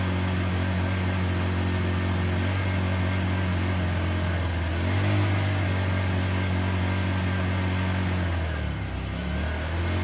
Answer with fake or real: real